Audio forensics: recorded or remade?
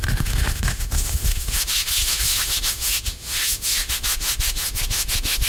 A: remade